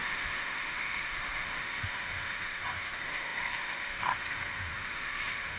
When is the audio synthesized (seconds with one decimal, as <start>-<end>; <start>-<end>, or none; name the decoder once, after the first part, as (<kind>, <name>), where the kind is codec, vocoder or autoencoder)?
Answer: 0.0-5.6 (autoencoder, DAC-VAE)